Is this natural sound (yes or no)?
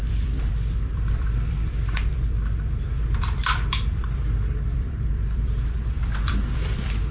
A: no